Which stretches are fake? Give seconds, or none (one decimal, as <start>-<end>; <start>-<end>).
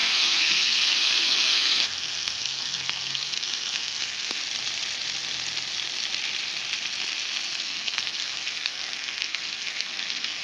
0.0-4.4; 7.6-10.4